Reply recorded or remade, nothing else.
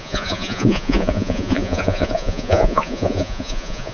remade